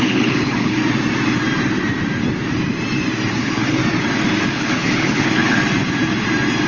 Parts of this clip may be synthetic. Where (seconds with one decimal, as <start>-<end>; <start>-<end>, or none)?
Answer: 0.0-0.8; 3.3-3.8; 4.5-5.6